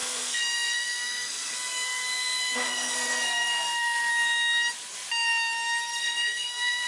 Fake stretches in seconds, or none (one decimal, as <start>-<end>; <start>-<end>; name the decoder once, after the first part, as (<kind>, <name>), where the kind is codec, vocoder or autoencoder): 0.0-4.1 (codec, SNAC); 5.9-6.9